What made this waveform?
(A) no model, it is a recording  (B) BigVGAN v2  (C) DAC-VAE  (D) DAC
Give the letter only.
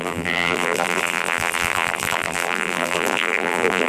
B